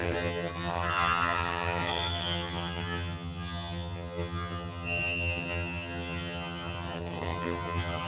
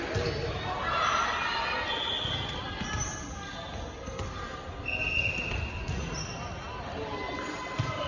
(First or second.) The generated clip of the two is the first